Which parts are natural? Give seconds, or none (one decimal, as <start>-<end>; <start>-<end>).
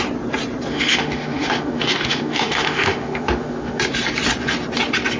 0.0-0.7; 3.8-5.2